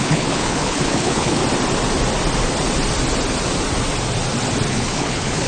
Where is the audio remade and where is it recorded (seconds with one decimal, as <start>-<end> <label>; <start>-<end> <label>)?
0.0-1.4 remade; 1.4-4.7 recorded; 4.7-5.5 remade